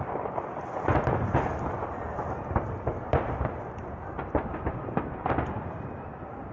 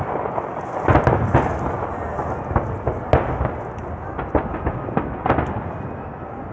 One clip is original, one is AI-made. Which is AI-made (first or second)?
first